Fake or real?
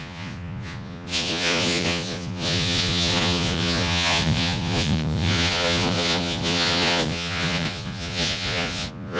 fake